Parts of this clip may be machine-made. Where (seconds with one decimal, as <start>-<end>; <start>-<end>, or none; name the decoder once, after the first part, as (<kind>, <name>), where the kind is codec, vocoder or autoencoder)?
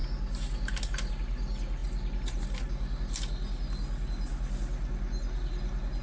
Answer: none